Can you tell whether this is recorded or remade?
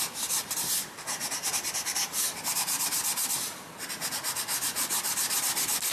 recorded